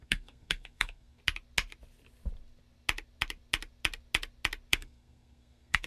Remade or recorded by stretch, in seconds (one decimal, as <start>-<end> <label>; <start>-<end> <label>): 0.0-1.2 remade; 1.2-4.7 recorded; 4.7-5.9 remade